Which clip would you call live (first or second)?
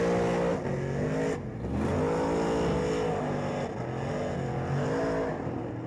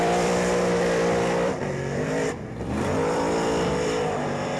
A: first